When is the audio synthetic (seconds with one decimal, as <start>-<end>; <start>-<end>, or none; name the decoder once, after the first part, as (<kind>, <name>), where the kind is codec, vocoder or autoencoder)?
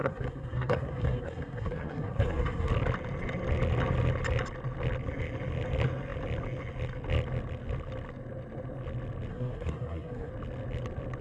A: 0.0-2.7 (codec, SNAC); 9.3-10.3